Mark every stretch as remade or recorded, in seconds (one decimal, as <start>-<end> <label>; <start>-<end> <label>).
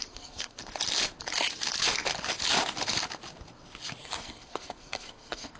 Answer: 0.0-0.6 remade; 0.6-4.0 recorded; 4.0-5.6 remade